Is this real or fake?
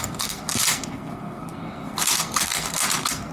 fake